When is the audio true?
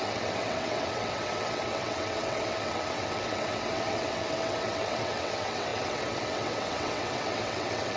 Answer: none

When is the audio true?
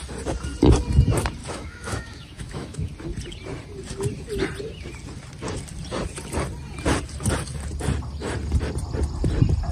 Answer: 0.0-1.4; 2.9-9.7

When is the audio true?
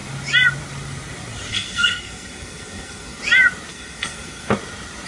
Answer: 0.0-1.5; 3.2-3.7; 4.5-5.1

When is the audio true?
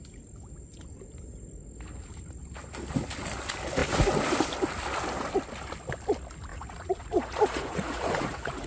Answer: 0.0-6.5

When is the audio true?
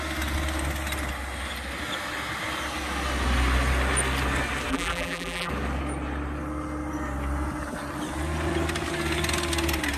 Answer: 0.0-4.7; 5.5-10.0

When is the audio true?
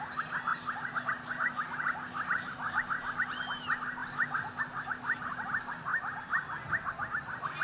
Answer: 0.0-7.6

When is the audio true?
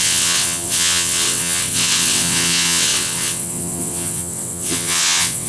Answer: none